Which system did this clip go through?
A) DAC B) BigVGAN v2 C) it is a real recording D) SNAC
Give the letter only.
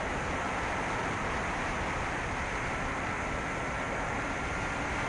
B